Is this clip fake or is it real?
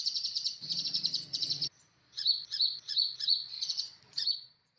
fake